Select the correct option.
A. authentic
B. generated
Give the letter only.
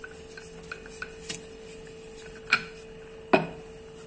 A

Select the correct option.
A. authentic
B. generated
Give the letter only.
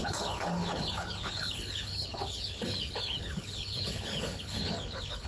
B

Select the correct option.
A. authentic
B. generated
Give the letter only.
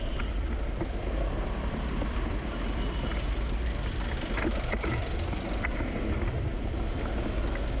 A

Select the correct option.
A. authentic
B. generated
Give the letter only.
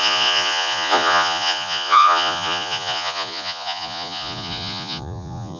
B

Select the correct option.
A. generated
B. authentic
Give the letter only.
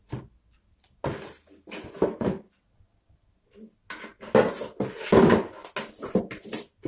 B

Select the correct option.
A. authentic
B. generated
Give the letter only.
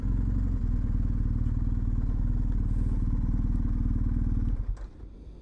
A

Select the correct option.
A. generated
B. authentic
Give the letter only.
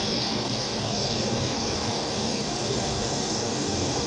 A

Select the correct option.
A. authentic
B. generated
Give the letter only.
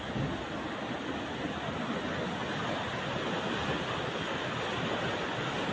A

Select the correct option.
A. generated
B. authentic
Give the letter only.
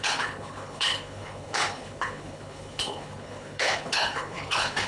A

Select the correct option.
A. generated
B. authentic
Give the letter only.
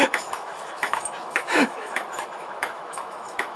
A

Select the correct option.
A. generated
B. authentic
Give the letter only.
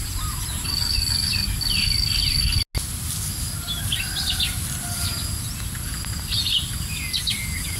B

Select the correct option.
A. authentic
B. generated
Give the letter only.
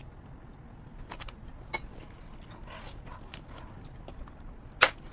A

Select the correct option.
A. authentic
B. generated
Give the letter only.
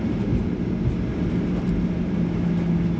A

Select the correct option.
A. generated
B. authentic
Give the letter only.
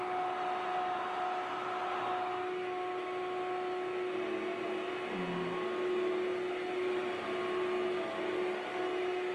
B